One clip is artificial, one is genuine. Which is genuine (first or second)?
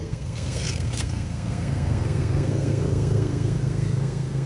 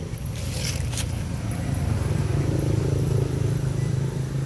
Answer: second